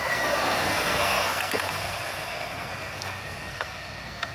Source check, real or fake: fake